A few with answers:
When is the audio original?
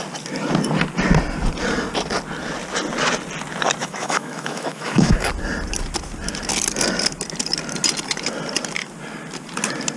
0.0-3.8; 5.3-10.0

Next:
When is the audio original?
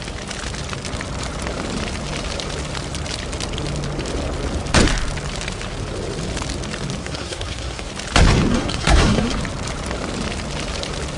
0.0-7.0; 7.9-8.5; 9.4-11.2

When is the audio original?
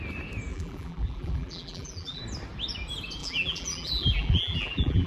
0.0-0.5; 2.2-3.2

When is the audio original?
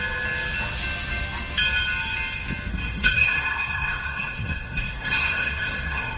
0.0-2.7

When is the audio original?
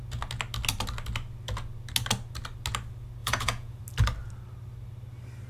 0.0-3.2; 3.8-5.5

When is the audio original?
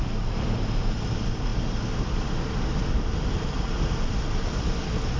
0.0-5.2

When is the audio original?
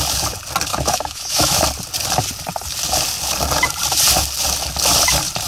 0.0-0.7; 1.6-5.5